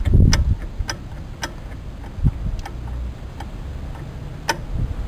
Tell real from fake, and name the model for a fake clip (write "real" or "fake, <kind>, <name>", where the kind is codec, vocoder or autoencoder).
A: real